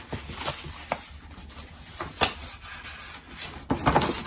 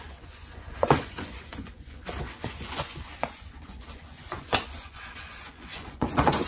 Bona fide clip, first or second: first